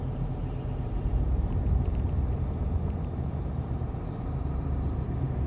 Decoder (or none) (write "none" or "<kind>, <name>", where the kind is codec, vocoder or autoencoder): vocoder, BigVGAN v2